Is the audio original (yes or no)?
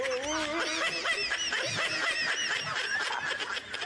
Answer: yes